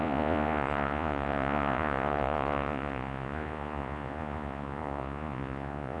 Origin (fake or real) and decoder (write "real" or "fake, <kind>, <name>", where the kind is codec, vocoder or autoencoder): fake, vocoder, Vocos